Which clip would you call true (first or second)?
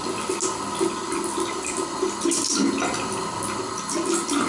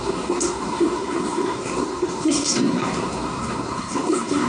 first